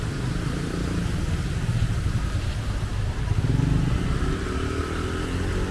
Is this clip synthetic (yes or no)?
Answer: no